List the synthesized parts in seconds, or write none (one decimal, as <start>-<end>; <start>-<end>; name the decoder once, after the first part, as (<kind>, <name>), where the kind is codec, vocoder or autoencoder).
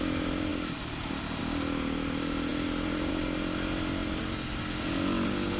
none